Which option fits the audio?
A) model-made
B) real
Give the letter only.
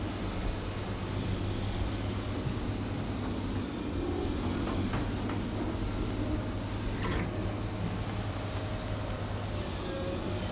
B